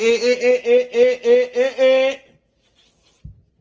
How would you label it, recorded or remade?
recorded